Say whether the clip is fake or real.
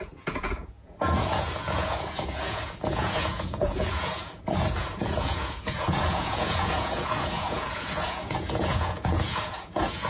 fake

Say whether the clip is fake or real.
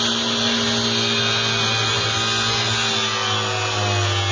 real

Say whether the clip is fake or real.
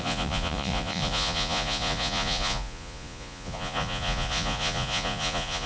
fake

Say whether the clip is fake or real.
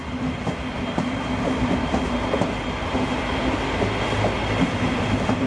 real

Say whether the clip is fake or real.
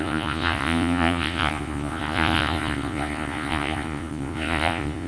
fake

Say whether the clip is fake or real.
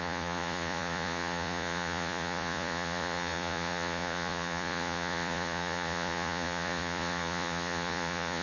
fake